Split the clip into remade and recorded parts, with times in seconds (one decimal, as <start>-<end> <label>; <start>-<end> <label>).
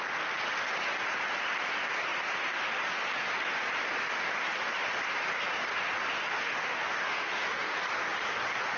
0.0-6.3 recorded; 6.3-7.8 remade; 7.8-8.8 recorded